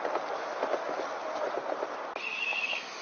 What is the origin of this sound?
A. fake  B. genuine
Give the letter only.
B